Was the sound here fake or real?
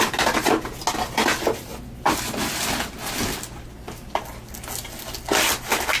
real